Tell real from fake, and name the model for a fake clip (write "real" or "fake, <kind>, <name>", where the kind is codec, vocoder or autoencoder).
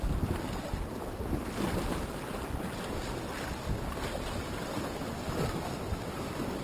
real